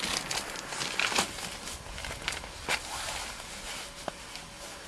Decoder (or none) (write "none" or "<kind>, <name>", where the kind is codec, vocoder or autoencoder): none